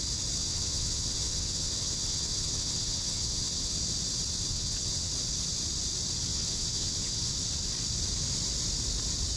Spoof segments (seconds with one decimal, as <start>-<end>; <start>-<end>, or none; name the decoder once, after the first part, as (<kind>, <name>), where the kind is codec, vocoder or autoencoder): 0.4-3.8 (vocoder, WaveNeXt); 4.5-5.1; 6.3-7.3